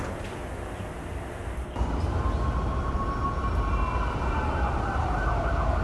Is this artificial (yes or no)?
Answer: no